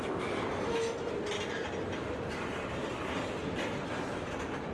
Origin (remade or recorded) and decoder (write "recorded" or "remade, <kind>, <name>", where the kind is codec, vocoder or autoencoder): recorded